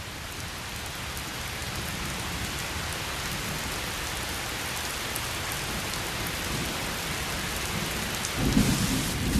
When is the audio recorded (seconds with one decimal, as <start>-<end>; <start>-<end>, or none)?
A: 0.0-9.4